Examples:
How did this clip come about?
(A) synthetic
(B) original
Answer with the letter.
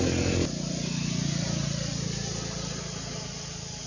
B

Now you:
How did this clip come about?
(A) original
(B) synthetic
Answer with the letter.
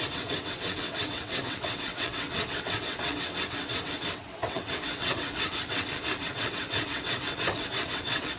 B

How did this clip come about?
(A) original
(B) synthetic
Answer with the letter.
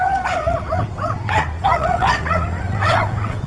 B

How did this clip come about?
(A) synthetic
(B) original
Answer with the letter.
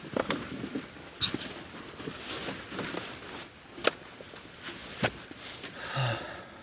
B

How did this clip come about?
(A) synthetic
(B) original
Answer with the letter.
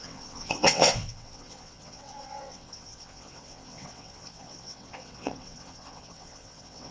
A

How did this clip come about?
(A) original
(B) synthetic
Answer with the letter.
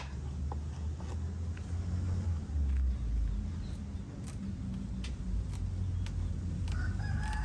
A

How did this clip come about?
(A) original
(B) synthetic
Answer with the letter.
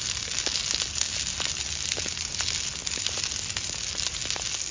A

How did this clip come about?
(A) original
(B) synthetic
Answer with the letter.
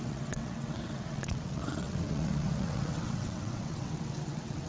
B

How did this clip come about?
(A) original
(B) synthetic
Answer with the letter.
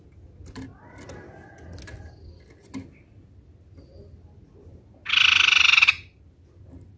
A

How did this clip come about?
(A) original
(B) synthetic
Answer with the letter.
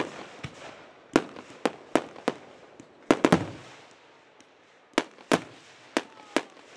A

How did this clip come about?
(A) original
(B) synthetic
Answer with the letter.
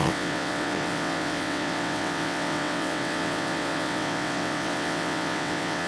B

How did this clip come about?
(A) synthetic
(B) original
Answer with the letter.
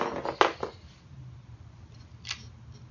B